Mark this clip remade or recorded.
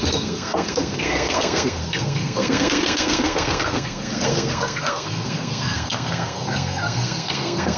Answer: remade